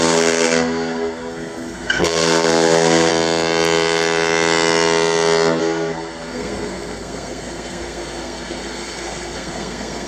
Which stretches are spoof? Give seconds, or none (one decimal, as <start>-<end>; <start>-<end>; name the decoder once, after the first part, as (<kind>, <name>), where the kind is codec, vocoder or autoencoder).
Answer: 0.0-3.1 (codec, SNAC); 5.6-10.1